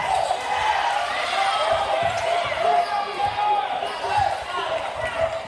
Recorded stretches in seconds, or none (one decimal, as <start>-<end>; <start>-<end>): 0.0-5.5